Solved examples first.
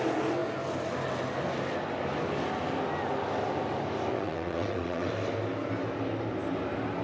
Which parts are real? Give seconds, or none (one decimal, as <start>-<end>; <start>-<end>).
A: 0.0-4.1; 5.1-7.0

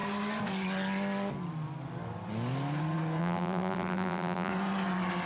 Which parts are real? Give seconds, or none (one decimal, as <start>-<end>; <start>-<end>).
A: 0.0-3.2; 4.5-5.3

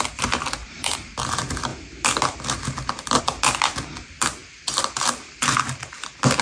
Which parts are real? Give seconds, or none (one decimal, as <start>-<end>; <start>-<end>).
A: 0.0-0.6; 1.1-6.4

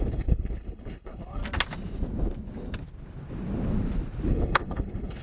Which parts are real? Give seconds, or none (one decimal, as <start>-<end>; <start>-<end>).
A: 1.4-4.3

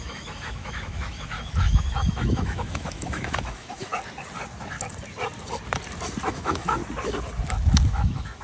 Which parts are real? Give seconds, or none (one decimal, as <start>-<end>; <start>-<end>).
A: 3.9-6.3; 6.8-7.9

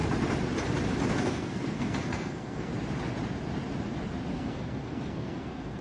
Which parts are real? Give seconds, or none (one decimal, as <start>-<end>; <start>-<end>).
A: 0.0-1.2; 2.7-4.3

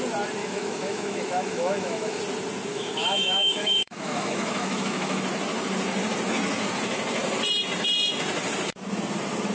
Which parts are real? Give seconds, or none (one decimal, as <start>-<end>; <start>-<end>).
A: 0.0-0.4; 2.2-2.7; 5.2-9.5